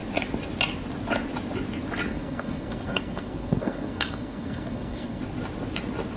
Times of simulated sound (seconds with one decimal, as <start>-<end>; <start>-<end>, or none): 2.1-5.2